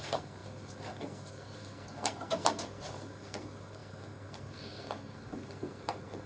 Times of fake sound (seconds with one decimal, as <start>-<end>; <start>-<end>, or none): 0.0-6.3